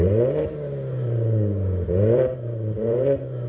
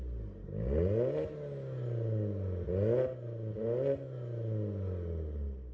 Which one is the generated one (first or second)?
first